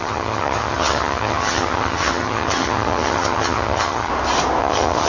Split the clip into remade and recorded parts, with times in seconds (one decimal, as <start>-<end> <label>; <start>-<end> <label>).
0.0-4.1 remade; 4.1-4.6 recorded; 4.6-5.1 remade

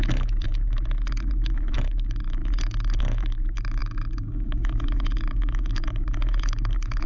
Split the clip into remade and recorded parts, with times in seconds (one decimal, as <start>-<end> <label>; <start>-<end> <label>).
0.0-2.4 remade; 2.4-3.0 recorded; 3.0-7.1 remade

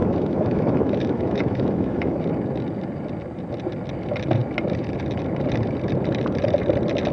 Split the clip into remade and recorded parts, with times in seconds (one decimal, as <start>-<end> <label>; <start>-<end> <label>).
0.0-2.2 remade; 2.2-7.1 recorded

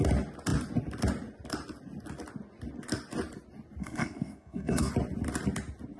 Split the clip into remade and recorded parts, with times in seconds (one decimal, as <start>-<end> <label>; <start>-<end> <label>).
0.0-3.8 recorded; 3.8-4.9 remade; 4.9-6.0 recorded

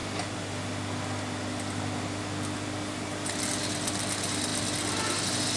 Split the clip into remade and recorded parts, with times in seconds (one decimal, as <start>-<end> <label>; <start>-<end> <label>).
0.0-5.6 recorded

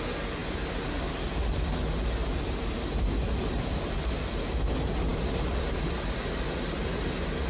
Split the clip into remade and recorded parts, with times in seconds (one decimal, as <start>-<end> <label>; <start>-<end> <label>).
0.0-7.5 recorded